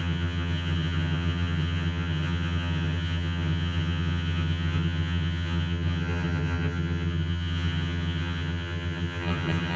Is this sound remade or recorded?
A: remade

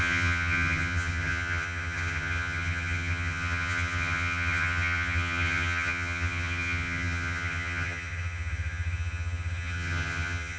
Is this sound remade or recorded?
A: remade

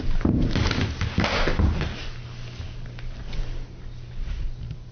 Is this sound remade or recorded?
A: recorded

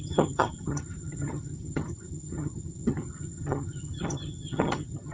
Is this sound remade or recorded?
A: remade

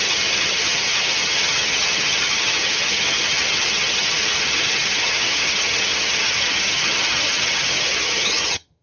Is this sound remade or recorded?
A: remade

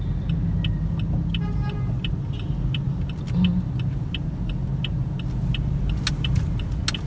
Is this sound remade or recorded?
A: recorded